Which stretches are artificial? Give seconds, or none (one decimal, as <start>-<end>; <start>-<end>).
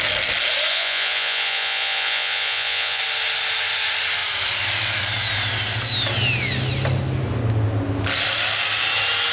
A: 0.7-3.0